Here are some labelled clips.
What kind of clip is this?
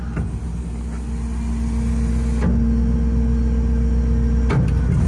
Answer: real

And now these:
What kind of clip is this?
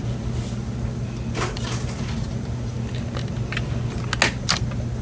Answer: real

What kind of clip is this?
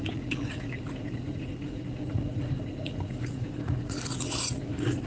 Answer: fake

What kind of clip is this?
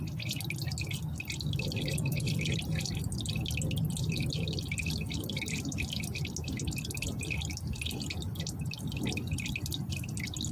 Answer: real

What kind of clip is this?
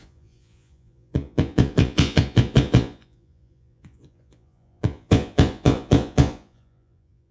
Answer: fake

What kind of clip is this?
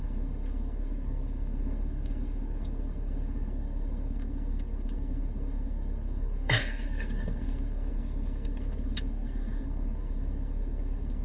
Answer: fake